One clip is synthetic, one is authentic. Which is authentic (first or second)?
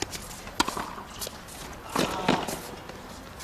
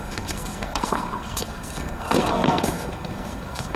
first